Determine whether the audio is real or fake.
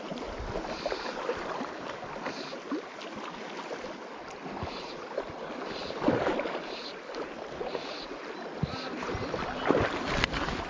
real